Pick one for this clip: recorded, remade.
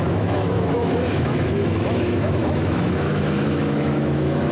remade